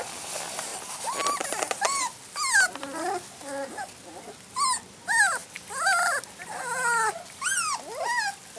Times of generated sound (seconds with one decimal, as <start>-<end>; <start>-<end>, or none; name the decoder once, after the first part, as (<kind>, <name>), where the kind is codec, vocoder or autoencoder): 0.7-2.0 (vocoder, BigVGAN v2)